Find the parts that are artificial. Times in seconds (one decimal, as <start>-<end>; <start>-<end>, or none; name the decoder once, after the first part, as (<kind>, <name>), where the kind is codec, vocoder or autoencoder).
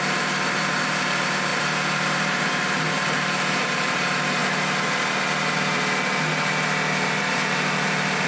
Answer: 0.0-4.4 (vocoder, BigVGAN v2); 7.2-8.3